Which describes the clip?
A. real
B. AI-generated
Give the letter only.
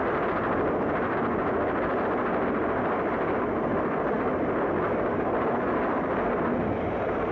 A